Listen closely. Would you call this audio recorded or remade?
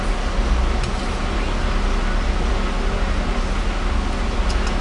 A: recorded